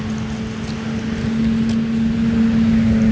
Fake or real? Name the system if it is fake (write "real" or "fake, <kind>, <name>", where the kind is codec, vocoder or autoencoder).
real